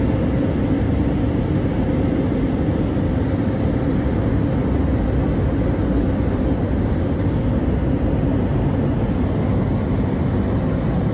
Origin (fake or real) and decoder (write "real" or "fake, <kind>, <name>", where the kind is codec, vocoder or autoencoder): real